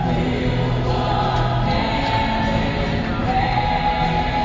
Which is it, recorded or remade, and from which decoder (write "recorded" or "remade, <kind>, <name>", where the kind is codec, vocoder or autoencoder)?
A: recorded